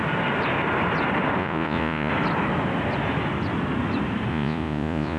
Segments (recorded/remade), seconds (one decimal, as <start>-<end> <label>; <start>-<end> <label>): 0.0-1.4 recorded; 1.4-2.1 remade; 2.1-4.3 recorded; 4.3-5.2 remade